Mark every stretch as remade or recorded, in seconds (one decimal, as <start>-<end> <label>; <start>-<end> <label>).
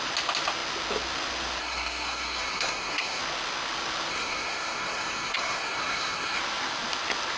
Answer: 0.0-1.6 recorded; 1.6-3.2 remade; 3.2-4.1 recorded; 4.1-6.4 remade; 6.4-7.4 recorded